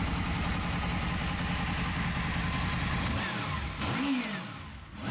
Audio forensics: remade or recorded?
recorded